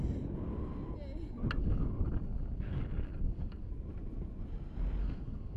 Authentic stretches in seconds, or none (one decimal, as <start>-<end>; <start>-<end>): 0.0-1.6; 3.7-5.0